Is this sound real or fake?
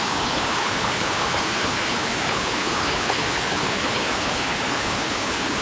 fake